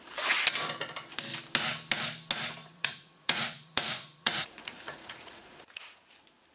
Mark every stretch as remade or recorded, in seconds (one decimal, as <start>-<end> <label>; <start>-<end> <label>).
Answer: 0.0-2.6 recorded; 2.6-6.1 remade; 6.1-6.5 recorded